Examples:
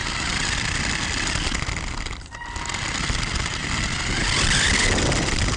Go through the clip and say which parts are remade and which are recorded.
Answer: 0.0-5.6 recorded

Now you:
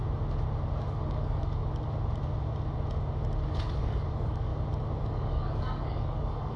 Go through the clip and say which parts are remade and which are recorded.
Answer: 0.0-0.9 recorded; 0.9-1.6 remade; 1.6-3.6 recorded; 3.6-4.5 remade; 4.5-5.0 recorded; 5.0-6.6 remade

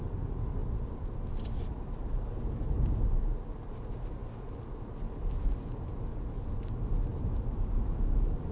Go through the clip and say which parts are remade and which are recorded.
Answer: 0.0-0.6 recorded; 0.6-3.8 remade; 3.8-7.1 recorded; 7.1-8.0 remade; 8.0-8.5 recorded